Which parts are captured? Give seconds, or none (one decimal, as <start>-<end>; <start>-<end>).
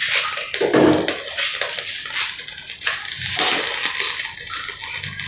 0.0-5.3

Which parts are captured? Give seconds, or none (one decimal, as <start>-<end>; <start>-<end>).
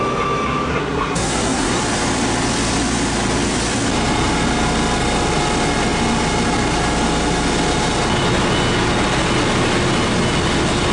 0.0-0.7; 1.8-10.9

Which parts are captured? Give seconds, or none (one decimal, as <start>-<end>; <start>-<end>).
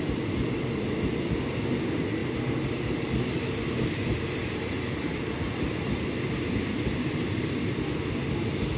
0.0-8.8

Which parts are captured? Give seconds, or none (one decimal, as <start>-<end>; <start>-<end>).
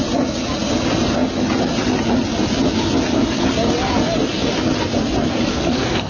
0.0-5.5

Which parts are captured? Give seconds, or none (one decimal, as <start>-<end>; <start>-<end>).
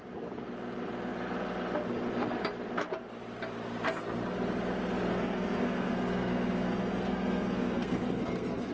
0.0-5.1